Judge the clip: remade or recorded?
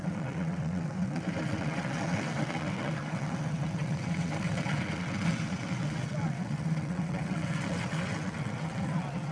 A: remade